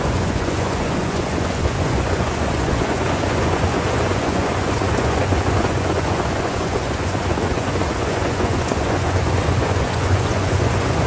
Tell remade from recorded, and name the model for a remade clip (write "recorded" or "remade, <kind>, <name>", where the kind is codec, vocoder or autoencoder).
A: remade, vocoder, Vocos